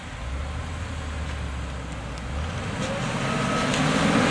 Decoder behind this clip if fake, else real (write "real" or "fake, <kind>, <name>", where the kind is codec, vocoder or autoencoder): real